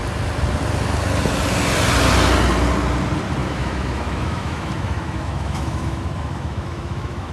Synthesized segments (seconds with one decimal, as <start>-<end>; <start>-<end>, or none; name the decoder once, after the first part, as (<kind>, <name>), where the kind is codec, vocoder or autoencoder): 3.4-7.3 (autoencoder, DAC-VAE)